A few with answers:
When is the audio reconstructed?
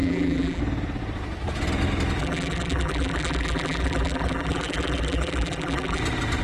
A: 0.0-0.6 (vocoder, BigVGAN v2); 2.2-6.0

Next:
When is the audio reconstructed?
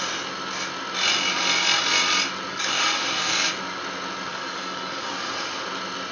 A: 2.5-3.5 (codec, DAC); 4.3-5.1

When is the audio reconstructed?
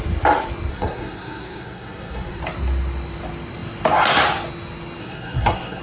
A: 0.7-2.4 (codec, SNAC); 5.0-5.8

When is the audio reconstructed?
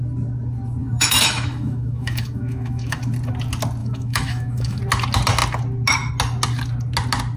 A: 0.8-3.0 (autoencoder, DAC-VAE); 3.8-4.8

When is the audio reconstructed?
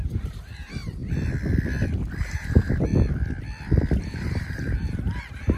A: 0.0-1.0 (vocoder, BigVGAN v2); 2.2-2.9; 4.0-5.6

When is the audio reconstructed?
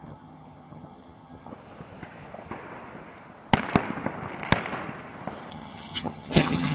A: 0.0-1.5 (vocoder, HiFi-GAN); 5.5-6.7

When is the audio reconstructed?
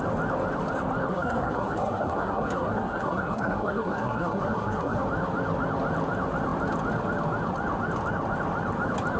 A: 1.1-5.0 (codec, SNAC)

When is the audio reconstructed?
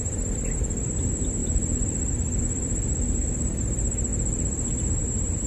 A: 0.0-1.4 (vocoder, BigVGAN v2); 2.4-4.1; 5.0-5.5